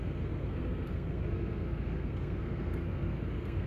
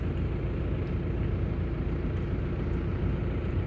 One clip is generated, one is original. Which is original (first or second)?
second